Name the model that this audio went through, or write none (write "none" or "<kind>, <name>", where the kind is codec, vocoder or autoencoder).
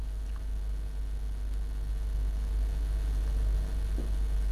none